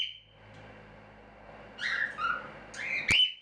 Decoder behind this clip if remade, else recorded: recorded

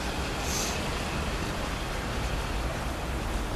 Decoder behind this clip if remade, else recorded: recorded